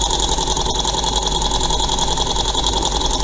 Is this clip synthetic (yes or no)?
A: no